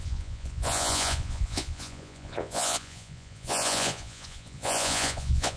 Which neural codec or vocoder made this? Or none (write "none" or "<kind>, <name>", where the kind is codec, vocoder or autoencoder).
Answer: vocoder, Vocos